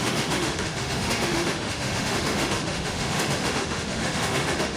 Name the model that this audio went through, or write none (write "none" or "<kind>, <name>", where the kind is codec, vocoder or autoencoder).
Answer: autoencoder, DAC-VAE